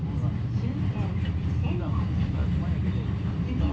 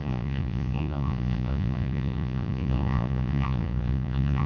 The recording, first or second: first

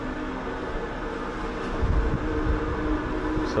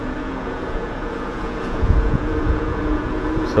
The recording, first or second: first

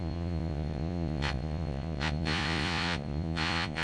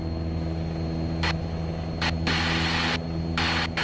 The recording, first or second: second